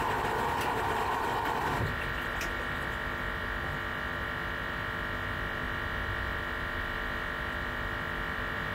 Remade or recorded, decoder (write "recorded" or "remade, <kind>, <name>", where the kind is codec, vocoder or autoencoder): recorded